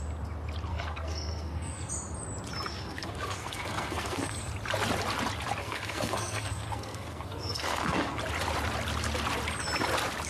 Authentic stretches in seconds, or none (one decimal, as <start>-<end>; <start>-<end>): 0.0-0.7; 1.9-2.7; 4.5-5.6; 8.2-10.3